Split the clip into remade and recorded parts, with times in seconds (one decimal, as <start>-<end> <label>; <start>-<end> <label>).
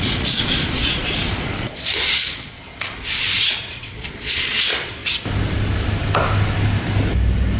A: 0.0-2.6 remade; 2.6-3.2 recorded; 3.2-5.0 remade; 5.0-7.6 recorded